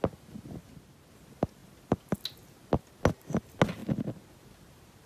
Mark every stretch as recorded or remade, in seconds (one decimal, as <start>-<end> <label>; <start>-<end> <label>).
0.0-5.1 recorded